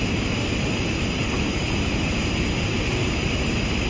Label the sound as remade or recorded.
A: recorded